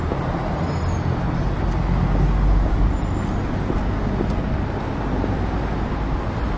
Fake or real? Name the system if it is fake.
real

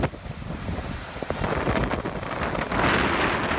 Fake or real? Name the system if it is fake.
real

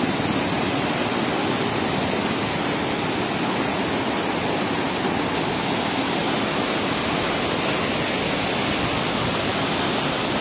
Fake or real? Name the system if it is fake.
real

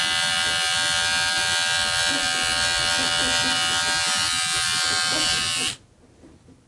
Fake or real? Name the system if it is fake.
real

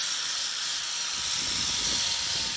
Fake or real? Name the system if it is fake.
fake, vocoder, BigVGAN v2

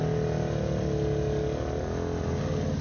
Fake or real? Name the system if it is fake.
real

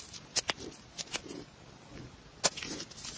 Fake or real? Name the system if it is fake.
real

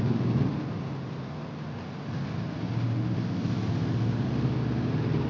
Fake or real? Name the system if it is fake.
real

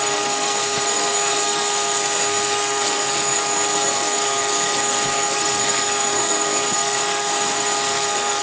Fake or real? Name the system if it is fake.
fake, codec, SNAC